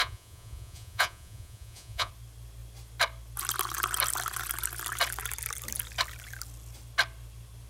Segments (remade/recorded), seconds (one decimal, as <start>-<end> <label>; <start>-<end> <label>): 0.0-2.1 remade; 2.1-7.7 recorded